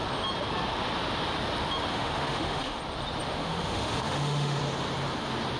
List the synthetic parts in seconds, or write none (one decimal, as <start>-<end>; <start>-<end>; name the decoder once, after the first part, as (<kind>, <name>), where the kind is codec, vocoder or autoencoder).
1.9-2.8 (autoencoder, DAC-VAE); 3.4-4.6